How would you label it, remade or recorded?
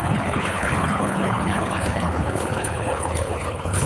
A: remade